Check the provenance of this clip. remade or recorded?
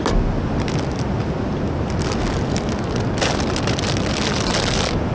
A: recorded